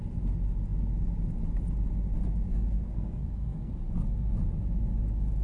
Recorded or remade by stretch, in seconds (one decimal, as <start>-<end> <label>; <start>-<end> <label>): 0.0-2.5 recorded; 2.5-3.7 remade; 3.7-5.4 recorded